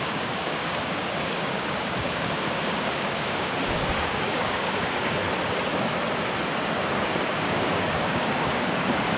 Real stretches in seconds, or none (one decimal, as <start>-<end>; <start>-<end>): 5.2-6.9